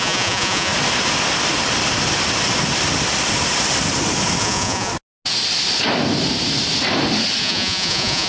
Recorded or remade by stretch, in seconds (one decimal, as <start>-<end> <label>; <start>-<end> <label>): 0.0-0.7 remade; 0.7-4.4 recorded; 4.4-4.9 remade; 4.9-7.4 recorded; 7.4-8.3 remade